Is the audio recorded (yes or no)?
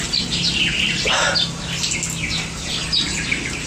yes